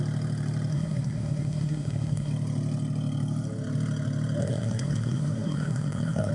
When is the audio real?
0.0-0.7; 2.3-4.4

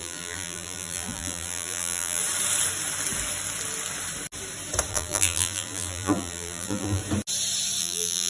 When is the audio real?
2.2-4.9; 7.0-7.8

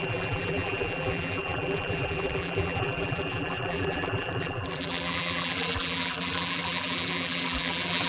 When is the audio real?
none